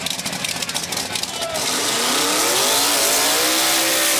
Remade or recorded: recorded